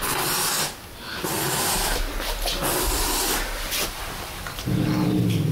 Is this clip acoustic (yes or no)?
yes